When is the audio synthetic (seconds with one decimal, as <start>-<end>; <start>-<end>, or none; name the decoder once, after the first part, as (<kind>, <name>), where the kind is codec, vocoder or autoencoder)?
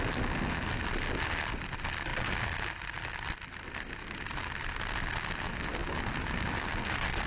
none